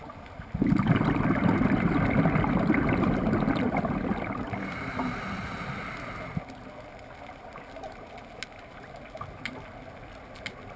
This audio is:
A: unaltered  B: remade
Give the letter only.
A